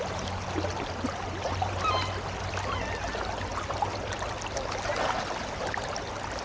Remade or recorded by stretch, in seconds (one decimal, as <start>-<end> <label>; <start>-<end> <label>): 0.0-6.4 recorded